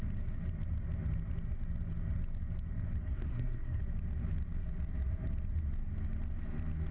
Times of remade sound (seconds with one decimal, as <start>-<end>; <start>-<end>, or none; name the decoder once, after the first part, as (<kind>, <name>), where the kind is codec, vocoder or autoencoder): 3.0-3.8 (codec, SNAC)